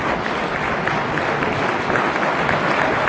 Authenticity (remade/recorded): recorded